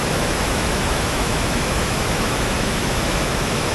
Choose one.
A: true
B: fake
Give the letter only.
B